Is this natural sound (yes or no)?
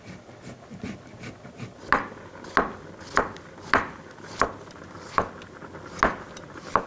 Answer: yes